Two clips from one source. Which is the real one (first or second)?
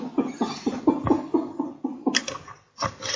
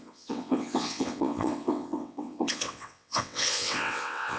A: first